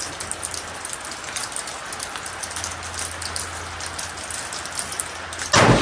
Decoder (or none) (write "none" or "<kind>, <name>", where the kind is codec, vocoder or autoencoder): none